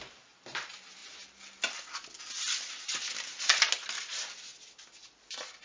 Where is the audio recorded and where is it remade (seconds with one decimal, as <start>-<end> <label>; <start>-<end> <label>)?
0.0-5.6 recorded